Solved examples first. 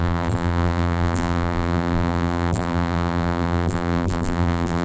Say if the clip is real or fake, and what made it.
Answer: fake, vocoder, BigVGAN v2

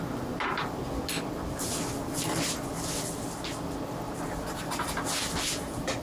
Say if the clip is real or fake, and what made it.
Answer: real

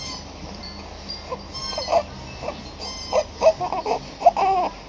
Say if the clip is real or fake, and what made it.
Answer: real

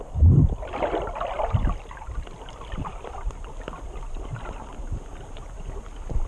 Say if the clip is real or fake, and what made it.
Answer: real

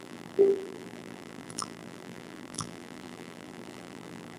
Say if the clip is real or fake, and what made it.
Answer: fake, vocoder, BigVGAN v2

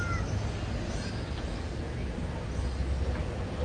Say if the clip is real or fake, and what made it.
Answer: real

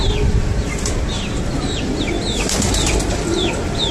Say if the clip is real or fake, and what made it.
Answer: fake, vocoder, BigVGAN v2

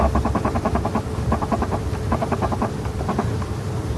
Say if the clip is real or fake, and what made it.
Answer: fake, vocoder, BigVGAN v2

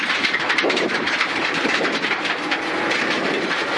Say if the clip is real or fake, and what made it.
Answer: fake, vocoder, BigVGAN v2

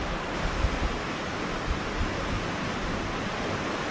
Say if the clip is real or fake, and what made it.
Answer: real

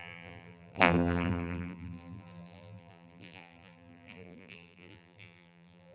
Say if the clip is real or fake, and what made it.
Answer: fake, vocoder, BigVGAN v2